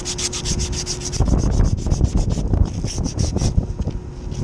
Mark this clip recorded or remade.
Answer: recorded